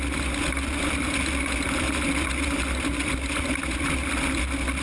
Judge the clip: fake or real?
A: real